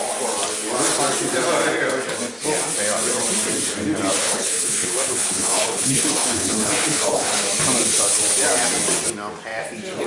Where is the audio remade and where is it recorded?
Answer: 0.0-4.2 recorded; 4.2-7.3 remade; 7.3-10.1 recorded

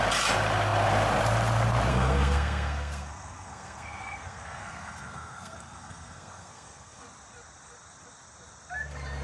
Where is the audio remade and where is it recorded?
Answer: 0.0-1.9 recorded; 1.9-7.0 remade; 7.0-9.2 recorded

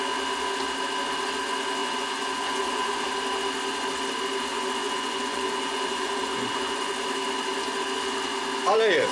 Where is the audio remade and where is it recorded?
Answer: 0.0-1.8 recorded; 1.8-3.1 remade; 3.1-4.5 recorded; 4.5-6.9 remade; 6.9-9.1 recorded

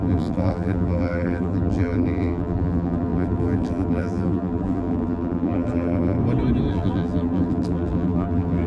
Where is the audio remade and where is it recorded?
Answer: 0.0-6.2 remade; 6.2-6.7 recorded; 6.7-8.7 remade